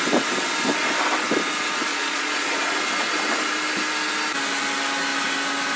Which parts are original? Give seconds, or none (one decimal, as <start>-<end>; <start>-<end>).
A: 0.0-1.9; 2.8-5.8